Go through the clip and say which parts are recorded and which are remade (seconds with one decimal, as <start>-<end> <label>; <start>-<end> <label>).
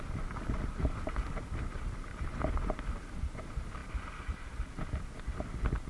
0.0-5.9 recorded